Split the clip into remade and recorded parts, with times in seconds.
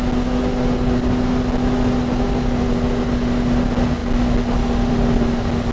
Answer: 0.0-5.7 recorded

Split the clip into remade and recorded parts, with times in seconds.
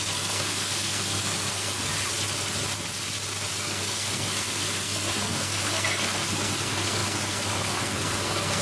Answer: 0.0-1.9 remade; 1.9-3.5 recorded; 3.5-8.6 remade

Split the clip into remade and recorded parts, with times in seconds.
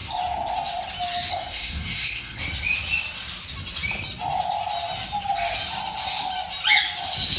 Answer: 0.0-1.3 recorded; 1.3-2.4 remade; 2.4-7.4 recorded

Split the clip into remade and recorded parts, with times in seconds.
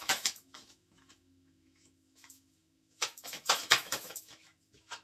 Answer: 0.0-5.0 remade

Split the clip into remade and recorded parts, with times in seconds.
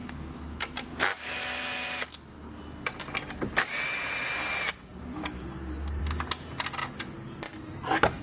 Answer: 0.0-8.2 recorded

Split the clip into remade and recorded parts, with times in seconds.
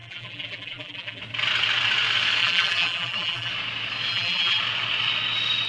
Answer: 0.0-1.2 remade; 1.2-2.4 recorded; 2.4-3.5 remade; 3.5-4.1 recorded; 4.1-4.6 remade; 4.6-5.7 recorded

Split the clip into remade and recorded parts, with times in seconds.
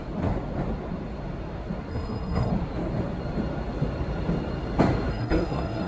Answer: 0.0-1.9 recorded; 1.9-2.5 remade; 2.5-5.1 recorded; 5.1-5.9 remade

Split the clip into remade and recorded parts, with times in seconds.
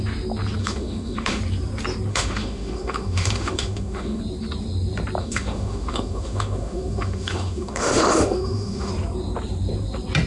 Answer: 0.0-0.6 recorded; 0.6-1.4 remade; 1.4-2.1 recorded; 2.1-4.2 remade; 4.2-5.2 recorded; 5.2-8.9 remade; 8.9-10.3 recorded